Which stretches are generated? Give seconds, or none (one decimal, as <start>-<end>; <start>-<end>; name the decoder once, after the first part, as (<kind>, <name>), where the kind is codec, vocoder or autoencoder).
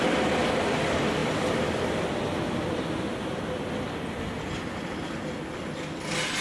none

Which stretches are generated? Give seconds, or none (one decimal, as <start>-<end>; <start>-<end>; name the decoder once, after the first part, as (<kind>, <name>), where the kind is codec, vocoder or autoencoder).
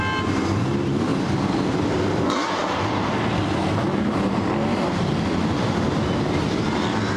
none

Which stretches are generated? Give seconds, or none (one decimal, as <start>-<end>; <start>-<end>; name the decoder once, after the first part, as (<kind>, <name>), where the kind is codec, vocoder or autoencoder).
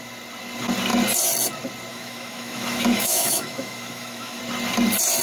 1.9-4.4 (autoencoder, DAC-VAE)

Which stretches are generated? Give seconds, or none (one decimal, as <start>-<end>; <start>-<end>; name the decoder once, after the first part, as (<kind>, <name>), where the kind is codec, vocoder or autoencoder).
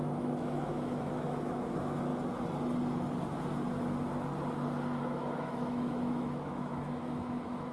0.0-2.1 (autoencoder, DAC-VAE); 5.0-7.7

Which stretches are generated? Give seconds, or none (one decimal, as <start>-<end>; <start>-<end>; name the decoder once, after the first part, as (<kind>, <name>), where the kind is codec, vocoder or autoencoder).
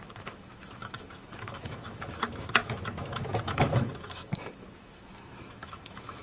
0.0-6.2 (autoencoder, DAC-VAE)